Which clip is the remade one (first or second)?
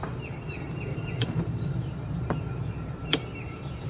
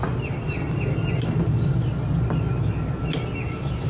first